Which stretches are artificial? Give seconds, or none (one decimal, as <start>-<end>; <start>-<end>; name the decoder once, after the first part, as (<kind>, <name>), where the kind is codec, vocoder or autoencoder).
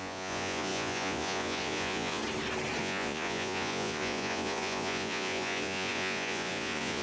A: 0.0-2.2 (vocoder, Vocos); 2.8-7.0